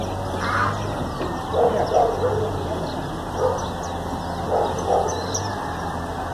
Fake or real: real